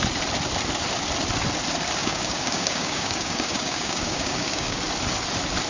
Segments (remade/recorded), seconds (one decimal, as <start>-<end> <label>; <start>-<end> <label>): 0.0-2.0 recorded; 2.0-4.8 remade; 4.8-5.7 recorded